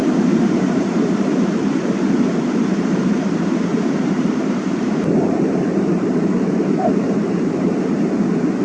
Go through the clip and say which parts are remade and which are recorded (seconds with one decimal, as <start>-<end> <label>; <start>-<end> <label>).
0.0-8.6 remade